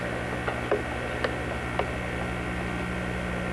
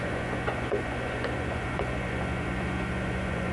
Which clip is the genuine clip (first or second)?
first